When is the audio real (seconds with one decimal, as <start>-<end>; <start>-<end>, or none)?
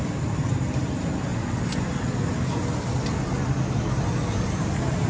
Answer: 1.3-4.4